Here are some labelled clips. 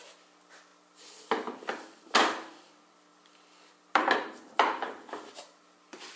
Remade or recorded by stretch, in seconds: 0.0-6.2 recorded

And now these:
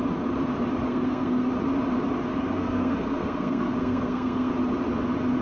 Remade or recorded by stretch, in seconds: 0.0-0.9 recorded; 0.9-1.5 remade; 1.5-2.3 recorded; 2.3-4.5 remade; 4.5-5.4 recorded

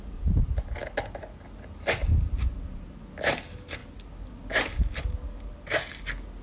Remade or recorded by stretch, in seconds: 0.0-6.4 recorded

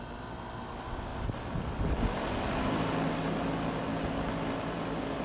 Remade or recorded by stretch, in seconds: 0.0-5.2 recorded

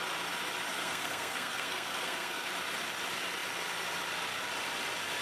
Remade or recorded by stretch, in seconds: 0.0-0.7 recorded; 0.7-2.5 remade; 2.5-5.2 recorded

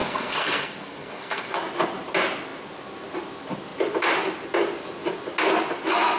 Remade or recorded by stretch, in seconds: 0.0-1.6 remade; 1.6-6.2 recorded